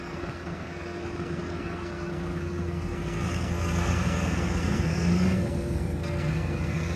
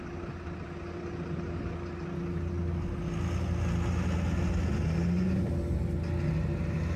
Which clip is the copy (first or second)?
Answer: first